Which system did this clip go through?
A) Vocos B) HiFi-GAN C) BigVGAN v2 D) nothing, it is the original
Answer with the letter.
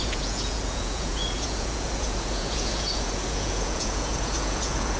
A